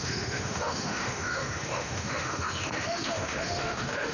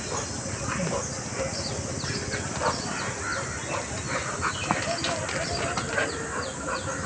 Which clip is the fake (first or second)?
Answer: first